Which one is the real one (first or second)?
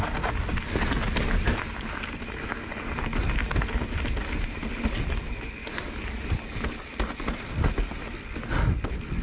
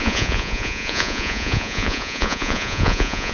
first